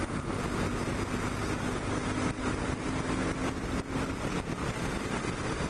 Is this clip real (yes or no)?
yes